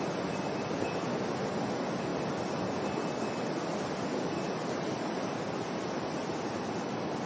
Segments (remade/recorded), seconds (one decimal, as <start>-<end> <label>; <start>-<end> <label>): 0.0-7.3 recorded